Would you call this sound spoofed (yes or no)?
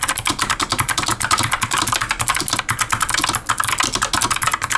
no